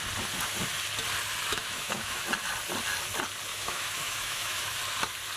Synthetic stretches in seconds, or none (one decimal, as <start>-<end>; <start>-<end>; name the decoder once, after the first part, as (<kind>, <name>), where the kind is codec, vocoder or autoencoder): 1.5-2.2 (autoencoder, DAC-VAE); 3.5-4.7